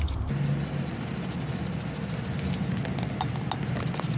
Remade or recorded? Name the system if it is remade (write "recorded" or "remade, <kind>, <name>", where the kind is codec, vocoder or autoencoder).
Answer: recorded